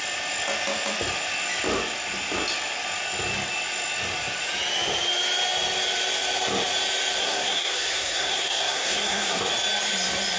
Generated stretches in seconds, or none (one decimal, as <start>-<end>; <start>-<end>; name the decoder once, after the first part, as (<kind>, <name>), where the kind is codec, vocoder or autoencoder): 7.2-9.4 (codec, SNAC)